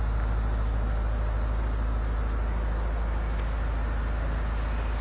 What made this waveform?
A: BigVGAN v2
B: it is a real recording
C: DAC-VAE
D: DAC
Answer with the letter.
B